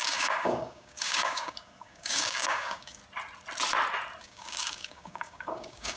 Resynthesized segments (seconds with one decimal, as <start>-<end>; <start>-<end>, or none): 0.0-3.0; 4.2-6.0

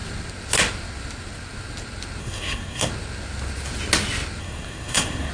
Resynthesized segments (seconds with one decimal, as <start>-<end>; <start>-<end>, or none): 2.2-2.9; 4.4-5.3

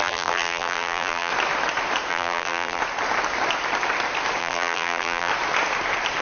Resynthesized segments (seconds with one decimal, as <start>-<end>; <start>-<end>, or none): 0.0-1.3; 2.1-2.8; 4.4-5.3

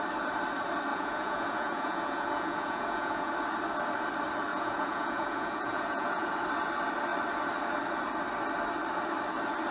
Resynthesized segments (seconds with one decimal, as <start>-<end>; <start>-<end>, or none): 0.9-3.3; 4.5-6.3